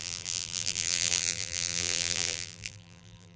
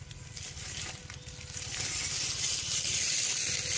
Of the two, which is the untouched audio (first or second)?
second